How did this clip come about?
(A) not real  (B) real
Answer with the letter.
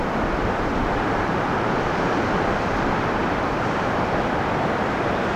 B